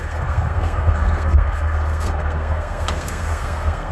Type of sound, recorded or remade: remade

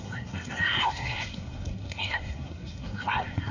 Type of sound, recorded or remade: remade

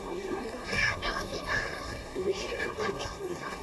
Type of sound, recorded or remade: remade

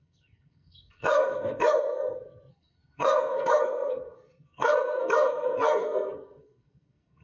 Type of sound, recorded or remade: remade